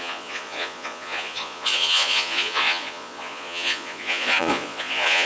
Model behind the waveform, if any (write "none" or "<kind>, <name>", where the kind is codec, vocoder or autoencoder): vocoder, Vocos